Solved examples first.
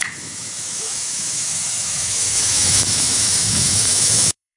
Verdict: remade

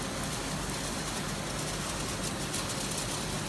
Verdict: recorded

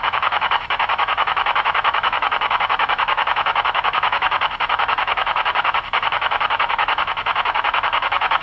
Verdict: remade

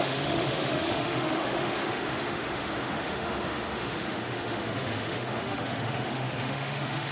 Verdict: remade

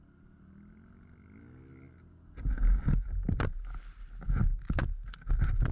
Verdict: recorded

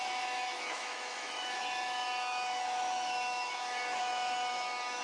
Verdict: remade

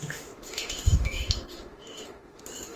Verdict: remade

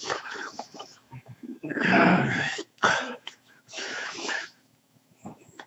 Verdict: remade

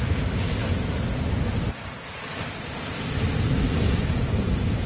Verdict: recorded